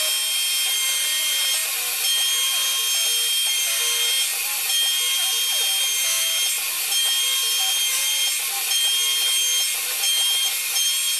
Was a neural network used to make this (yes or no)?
no